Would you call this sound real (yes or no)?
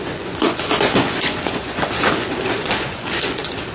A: no